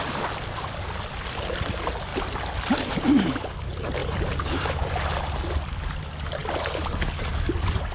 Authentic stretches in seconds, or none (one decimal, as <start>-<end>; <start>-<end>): 0.0-7.9